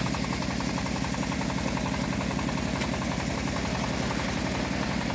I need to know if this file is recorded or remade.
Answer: recorded